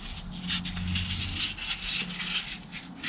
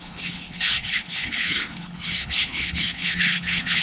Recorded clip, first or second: first